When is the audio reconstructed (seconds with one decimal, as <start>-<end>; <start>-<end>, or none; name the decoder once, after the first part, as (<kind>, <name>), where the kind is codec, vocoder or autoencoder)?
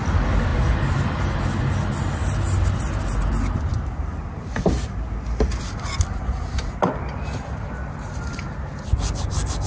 none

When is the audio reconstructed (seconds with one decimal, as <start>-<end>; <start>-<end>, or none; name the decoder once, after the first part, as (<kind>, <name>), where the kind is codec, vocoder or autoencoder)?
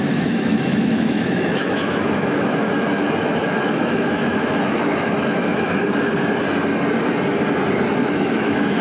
0.0-5.5 (autoencoder, DAC-VAE); 8.0-8.8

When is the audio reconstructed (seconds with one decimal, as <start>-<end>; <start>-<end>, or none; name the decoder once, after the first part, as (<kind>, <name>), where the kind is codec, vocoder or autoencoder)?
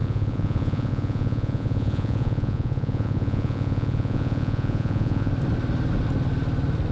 0.0-5.3 (vocoder, Vocos)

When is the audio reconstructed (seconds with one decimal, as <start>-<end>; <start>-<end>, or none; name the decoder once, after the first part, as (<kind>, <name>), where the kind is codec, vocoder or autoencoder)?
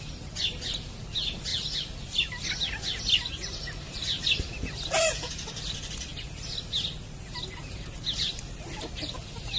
none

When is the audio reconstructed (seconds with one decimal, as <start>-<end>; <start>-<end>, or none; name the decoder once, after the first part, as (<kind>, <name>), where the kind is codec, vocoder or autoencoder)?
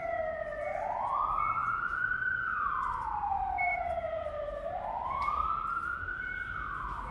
1.6-2.8 (vocoder, BigVGAN v2); 3.3-5.5